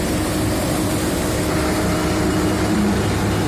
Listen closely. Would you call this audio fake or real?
real